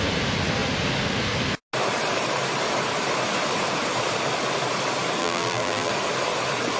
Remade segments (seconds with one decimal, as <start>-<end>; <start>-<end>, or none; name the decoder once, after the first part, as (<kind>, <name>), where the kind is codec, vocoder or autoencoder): 5.2-5.9 (vocoder, BigVGAN v2)